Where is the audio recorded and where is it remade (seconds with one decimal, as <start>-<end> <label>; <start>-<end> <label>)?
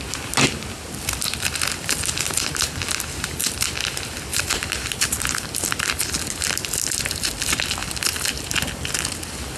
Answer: 0.0-4.3 recorded; 4.3-6.1 remade; 6.1-7.8 recorded; 7.8-8.3 remade; 8.3-9.6 recorded